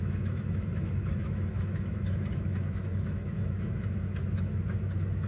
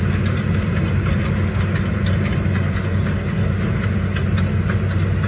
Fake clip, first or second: first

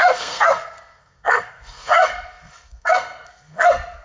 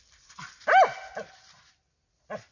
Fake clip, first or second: first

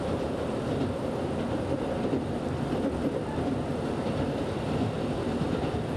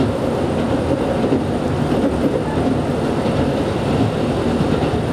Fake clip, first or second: first